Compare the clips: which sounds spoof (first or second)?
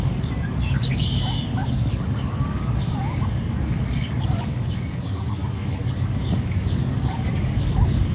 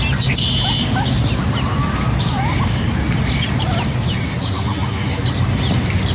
first